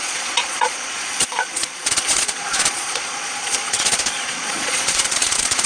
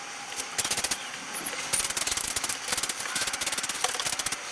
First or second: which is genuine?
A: second